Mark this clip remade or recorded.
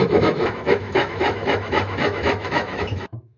remade